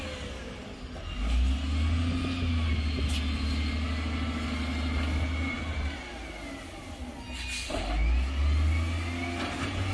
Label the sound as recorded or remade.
recorded